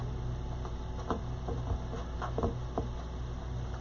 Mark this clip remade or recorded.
recorded